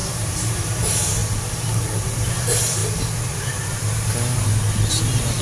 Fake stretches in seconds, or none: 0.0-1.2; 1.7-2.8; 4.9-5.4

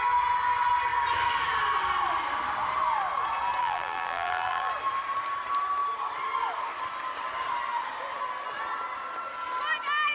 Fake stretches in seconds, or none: 3.6-4.7

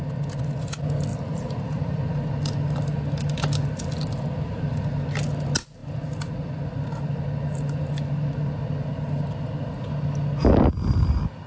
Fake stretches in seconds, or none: 1.1-2.0

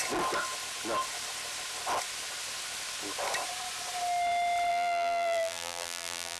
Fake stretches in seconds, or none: 4.7-6.4